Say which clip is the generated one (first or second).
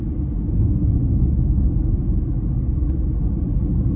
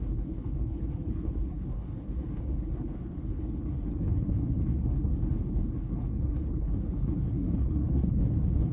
second